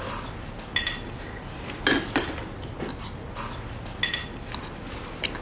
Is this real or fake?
real